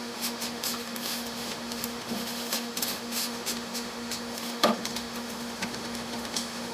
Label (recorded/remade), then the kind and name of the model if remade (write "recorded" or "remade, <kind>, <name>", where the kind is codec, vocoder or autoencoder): remade, autoencoder, DAC-VAE